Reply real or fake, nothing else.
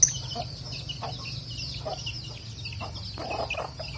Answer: real